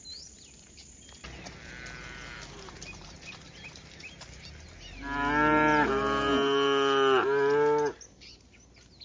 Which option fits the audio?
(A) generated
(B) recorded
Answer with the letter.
B